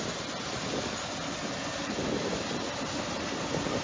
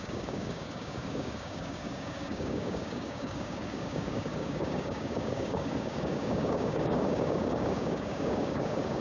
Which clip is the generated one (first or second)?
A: second